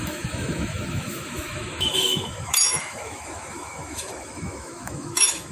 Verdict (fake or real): fake